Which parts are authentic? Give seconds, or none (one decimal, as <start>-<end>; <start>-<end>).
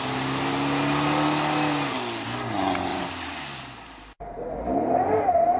0.0-2.9; 4.4-5.6